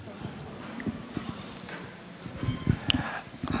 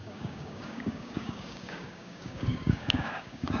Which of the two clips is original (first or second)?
first